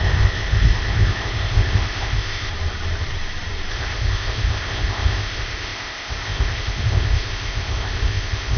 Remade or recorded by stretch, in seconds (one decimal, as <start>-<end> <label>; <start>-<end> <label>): 0.0-2.5 remade; 2.5-3.7 recorded; 3.7-8.6 remade